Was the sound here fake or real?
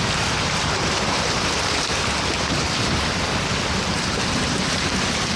fake